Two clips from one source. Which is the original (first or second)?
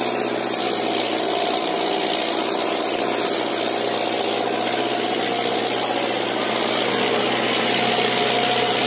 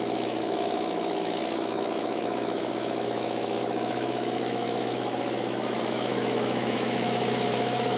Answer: first